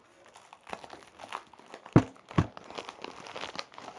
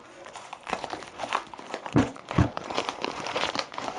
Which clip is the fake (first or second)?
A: second